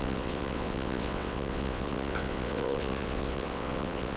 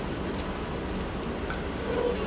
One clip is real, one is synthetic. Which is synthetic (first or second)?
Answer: first